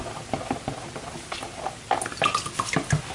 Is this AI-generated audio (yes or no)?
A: no